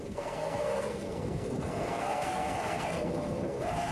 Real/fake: fake